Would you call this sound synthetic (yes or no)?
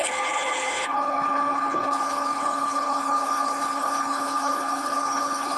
yes